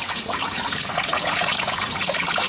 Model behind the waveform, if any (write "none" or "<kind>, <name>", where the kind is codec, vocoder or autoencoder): vocoder, Vocos